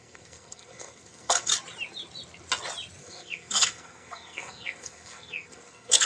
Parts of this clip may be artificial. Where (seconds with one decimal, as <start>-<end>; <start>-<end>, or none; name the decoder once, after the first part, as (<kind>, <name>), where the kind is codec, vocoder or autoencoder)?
0.0-1.5 (codec, SNAC); 3.0-6.1